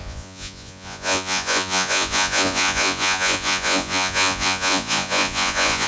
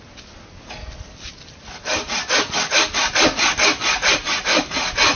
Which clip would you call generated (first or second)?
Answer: first